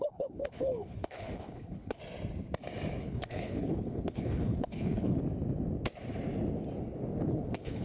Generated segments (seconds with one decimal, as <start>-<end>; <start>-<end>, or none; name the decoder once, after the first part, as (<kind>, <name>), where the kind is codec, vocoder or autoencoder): 0.0-2.0 (codec, HILCodec); 3.0-5.2; 7.3-7.8